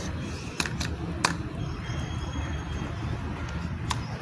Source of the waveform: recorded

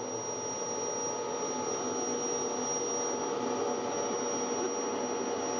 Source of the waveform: recorded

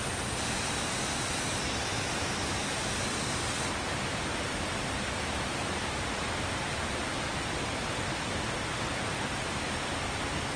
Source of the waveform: recorded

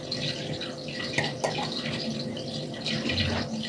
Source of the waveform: recorded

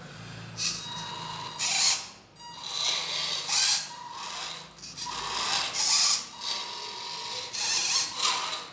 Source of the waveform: recorded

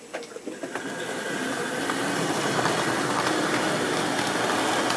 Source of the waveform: recorded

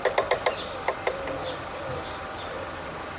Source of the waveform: recorded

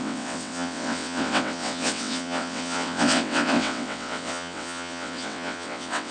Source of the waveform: remade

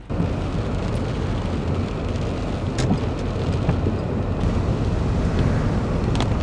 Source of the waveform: recorded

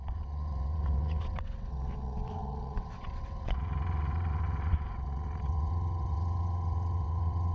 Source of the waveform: remade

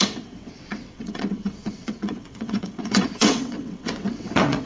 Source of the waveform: remade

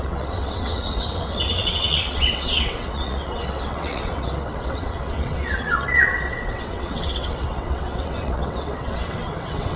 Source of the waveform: remade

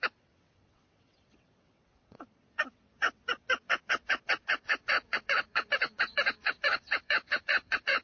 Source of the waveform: remade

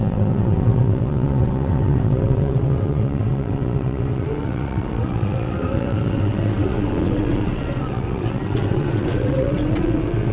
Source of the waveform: remade